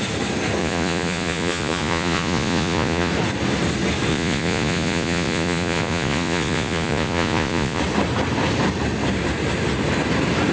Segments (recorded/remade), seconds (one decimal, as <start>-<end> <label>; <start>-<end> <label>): 0.0-0.6 recorded; 0.6-3.1 remade; 3.1-4.1 recorded; 4.1-7.8 remade; 7.8-10.5 recorded